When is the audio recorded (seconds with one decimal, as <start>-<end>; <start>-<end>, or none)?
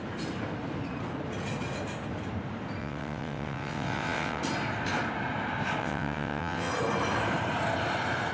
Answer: 0.0-2.8; 4.4-5.8; 6.7-8.3